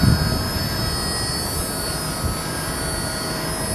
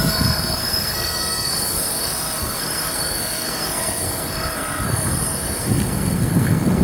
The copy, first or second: second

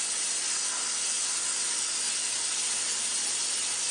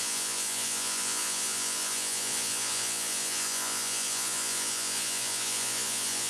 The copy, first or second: second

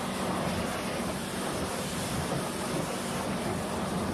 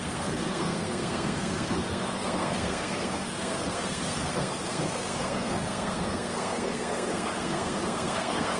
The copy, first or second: second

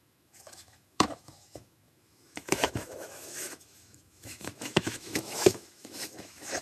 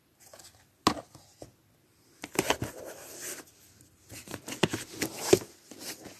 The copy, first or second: first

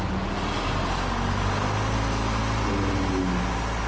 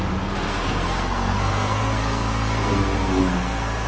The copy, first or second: second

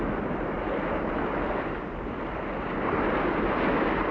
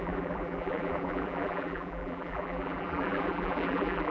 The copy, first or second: second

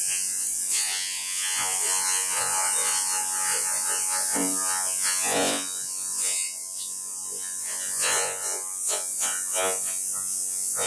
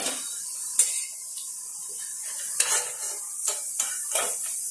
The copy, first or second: first